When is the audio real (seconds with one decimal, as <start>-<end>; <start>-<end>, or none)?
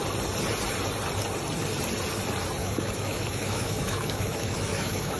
0.0-2.6